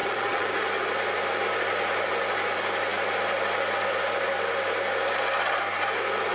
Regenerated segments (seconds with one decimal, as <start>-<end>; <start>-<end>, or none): 0.0-0.5

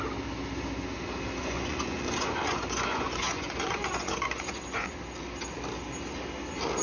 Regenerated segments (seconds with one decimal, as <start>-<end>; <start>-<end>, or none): 1.4-4.9

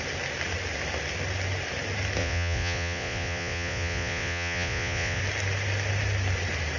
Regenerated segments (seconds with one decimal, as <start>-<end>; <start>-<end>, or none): 2.2-5.2

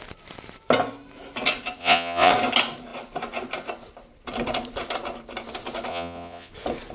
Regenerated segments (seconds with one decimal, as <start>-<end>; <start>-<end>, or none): 1.8-2.3; 5.9-6.5

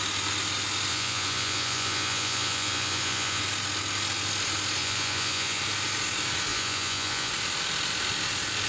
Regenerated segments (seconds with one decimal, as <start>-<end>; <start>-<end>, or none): 0.9-3.4; 4.8-5.6; 6.5-7.3

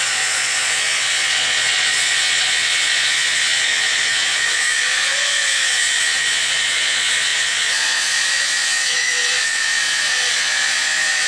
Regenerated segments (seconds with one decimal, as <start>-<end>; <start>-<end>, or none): 0.0-11.3

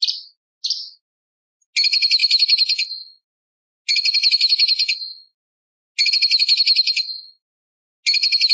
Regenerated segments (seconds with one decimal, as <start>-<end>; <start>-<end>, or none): none

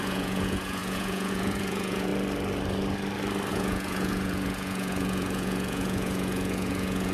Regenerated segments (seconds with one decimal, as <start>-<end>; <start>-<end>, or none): 0.0-2.1; 3.5-7.1